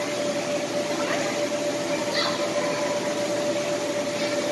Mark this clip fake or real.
real